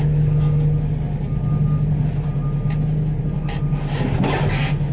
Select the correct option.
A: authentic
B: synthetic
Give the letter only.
A